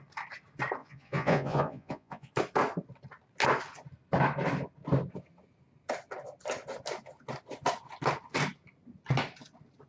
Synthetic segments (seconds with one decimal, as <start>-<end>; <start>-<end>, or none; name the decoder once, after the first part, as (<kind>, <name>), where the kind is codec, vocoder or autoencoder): 0.8-2.3 (vocoder, Vocos)

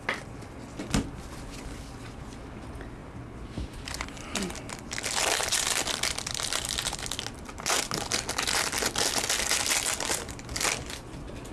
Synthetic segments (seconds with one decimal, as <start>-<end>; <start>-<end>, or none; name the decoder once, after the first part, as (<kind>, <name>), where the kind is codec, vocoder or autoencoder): none